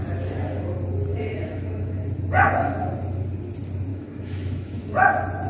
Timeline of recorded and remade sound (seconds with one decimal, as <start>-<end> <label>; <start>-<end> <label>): 0.0-1.1 recorded; 1.1-2.0 remade; 2.0-3.9 recorded; 3.9-4.8 remade; 4.8-5.5 recorded